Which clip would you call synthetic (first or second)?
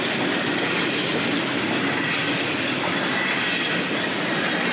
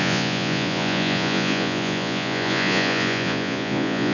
second